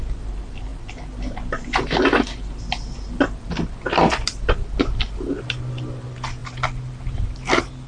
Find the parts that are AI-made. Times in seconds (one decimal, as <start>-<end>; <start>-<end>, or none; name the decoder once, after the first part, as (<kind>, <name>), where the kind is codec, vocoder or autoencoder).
none